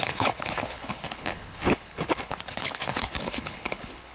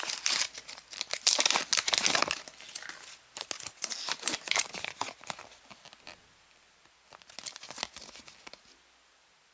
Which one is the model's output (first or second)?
first